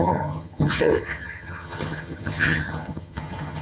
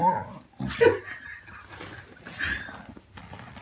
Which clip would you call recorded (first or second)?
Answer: second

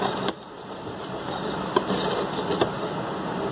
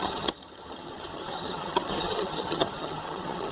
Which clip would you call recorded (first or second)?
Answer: first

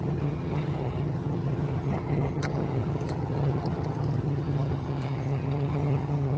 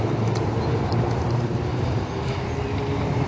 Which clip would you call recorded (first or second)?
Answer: second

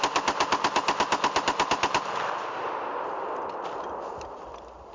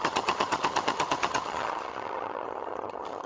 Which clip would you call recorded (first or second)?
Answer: first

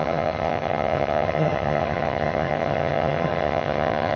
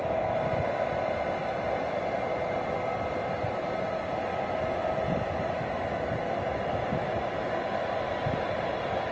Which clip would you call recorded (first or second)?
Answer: second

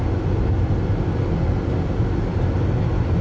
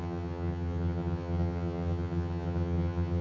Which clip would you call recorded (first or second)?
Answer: first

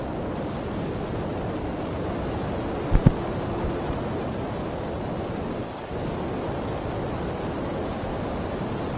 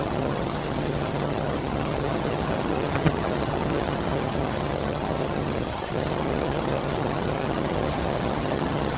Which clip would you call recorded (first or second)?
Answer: first